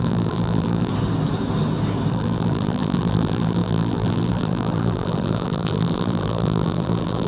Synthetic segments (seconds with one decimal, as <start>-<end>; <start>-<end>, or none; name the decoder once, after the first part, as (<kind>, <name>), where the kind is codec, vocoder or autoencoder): 0.0-0.9 (vocoder, BigVGAN v2); 2.1-7.3